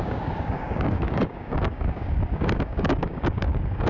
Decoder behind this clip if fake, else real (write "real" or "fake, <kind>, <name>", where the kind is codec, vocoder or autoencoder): fake, codec, DAC